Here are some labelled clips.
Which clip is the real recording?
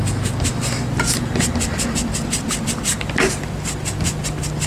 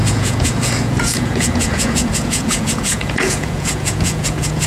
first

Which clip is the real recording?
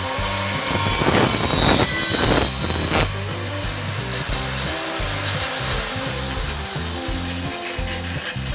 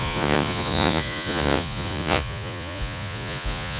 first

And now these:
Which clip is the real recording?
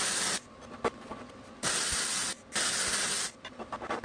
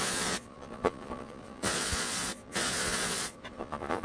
first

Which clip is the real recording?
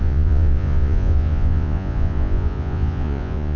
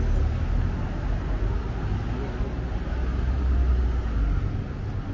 second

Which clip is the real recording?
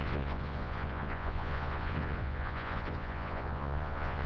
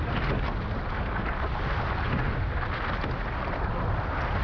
second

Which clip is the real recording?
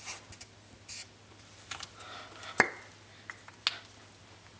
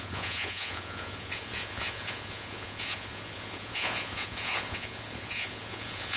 first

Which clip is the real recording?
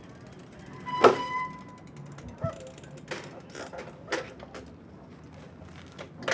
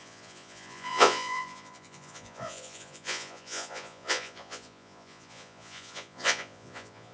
first